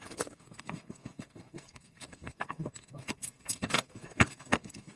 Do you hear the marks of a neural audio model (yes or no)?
yes